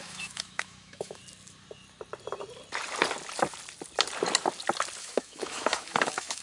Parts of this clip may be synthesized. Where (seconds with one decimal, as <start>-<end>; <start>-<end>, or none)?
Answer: 0.0-1.2; 5.0-6.4